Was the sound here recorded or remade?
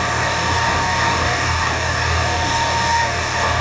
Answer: remade